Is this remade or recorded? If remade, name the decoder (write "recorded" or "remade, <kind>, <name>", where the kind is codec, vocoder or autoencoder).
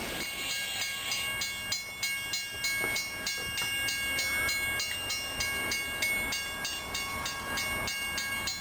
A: recorded